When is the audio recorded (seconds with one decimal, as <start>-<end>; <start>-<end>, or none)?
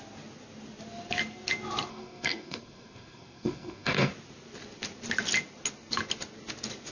0.0-1.9; 4.1-6.9